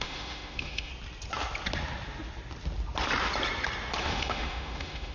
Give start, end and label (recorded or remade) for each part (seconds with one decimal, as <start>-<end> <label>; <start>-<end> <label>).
0.0-0.9 remade; 0.9-4.0 recorded; 4.0-5.1 remade